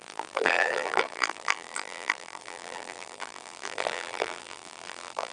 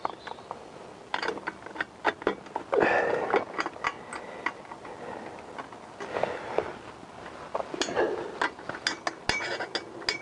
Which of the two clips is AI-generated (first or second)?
first